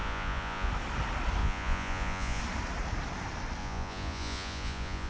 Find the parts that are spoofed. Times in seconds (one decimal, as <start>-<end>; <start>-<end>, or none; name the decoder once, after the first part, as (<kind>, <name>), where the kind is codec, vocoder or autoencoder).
0.0-0.7 (vocoder, Vocos); 1.4-2.4; 3.6-5.1